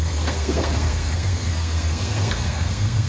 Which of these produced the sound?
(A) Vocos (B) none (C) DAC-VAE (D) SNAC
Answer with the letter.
D